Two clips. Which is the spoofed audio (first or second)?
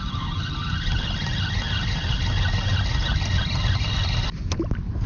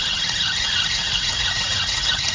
second